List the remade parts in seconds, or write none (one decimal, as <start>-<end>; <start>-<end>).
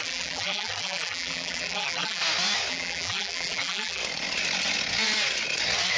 0.0-2.2; 2.7-4.0